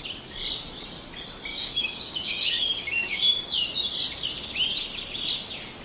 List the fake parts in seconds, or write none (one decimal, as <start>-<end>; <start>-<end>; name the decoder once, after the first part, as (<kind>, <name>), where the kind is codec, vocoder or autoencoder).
1.5-3.8 (codec, DAC)